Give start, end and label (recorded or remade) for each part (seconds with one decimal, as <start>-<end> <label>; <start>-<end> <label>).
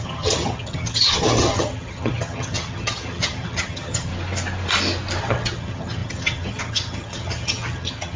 0.0-4.1 remade; 4.1-5.2 recorded; 5.2-8.2 remade